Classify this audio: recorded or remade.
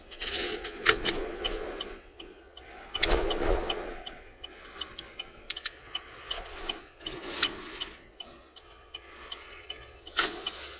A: remade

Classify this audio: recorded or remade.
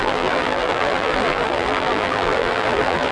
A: remade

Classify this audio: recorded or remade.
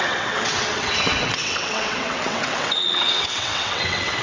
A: remade